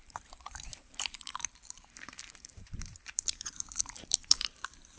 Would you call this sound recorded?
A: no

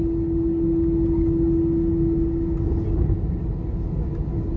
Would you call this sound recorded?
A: yes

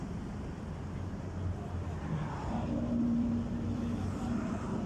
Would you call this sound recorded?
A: no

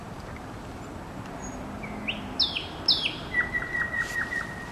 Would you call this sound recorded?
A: yes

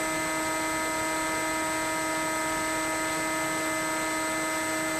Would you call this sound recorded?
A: yes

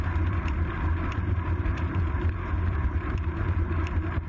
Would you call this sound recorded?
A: no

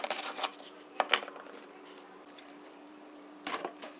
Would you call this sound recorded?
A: no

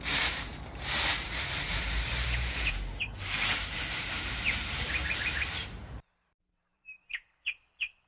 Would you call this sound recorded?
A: no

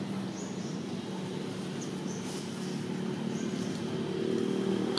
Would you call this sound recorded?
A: yes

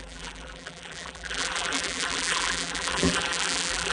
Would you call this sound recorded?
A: no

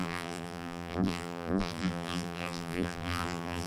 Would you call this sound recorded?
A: no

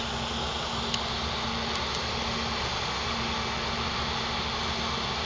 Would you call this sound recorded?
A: yes